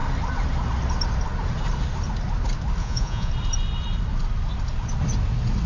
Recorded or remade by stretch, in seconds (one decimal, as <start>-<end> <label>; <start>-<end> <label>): 0.0-2.8 recorded; 2.8-3.3 remade; 3.3-5.7 recorded